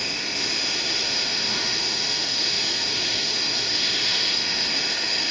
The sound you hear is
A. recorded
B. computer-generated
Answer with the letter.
B